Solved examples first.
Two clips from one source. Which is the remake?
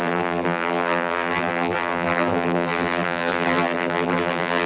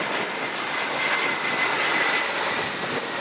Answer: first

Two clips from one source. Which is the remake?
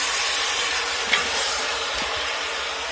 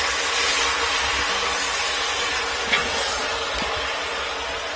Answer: first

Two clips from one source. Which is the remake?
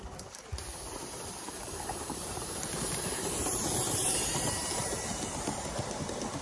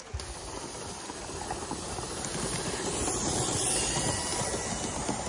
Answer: first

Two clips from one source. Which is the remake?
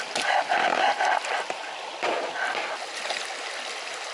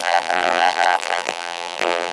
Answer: second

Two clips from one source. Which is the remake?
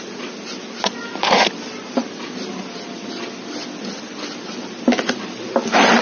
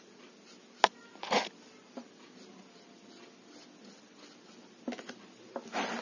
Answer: first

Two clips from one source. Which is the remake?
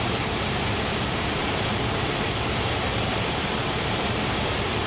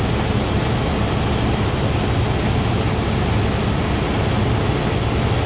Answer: first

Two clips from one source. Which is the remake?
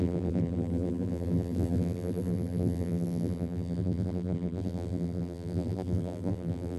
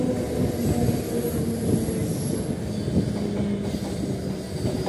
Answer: first